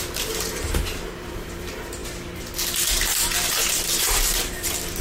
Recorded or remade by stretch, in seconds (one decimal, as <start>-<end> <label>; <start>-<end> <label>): 0.0-2.0 remade; 2.0-3.5 recorded; 3.5-5.0 remade